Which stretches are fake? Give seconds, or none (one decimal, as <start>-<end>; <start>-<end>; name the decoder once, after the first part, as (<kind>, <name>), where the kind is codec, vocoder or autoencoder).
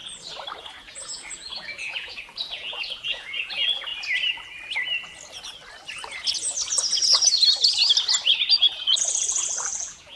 0.6-3.9 (vocoder, Vocos); 8.5-10.2